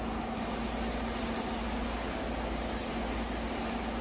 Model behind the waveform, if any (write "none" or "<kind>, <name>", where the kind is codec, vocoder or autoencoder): none